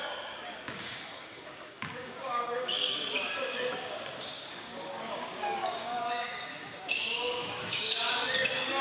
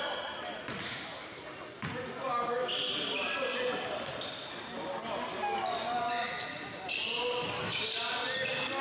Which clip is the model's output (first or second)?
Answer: first